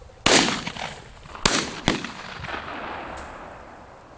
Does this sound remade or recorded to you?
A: recorded